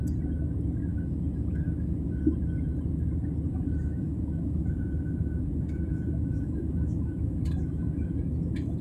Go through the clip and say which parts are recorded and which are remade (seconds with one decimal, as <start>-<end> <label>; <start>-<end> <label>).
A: 0.0-0.9 recorded; 0.9-2.2 remade; 2.2-3.5 recorded; 3.5-8.8 remade